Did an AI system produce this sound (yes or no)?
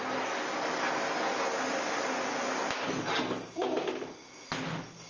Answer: no